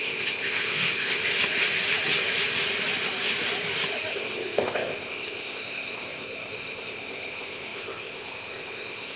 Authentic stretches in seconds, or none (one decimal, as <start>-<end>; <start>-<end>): 1.2-4.1